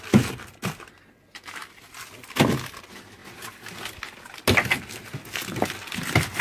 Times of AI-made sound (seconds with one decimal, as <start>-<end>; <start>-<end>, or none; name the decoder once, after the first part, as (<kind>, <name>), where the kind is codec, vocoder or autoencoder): 3.2-3.8 (vocoder, BigVGAN v2)